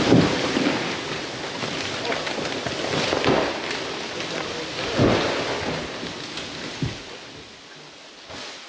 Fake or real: real